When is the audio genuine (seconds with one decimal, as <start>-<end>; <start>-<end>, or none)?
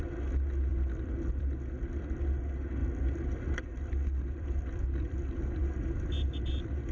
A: 0.0-2.8; 5.6-6.9